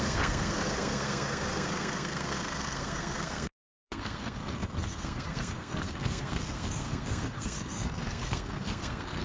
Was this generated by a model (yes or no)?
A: yes